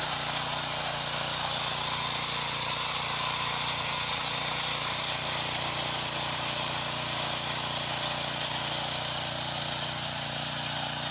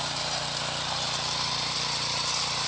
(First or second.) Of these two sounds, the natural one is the first